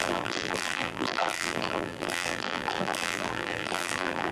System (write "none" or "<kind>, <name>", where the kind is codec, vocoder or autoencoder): vocoder, BigVGAN v2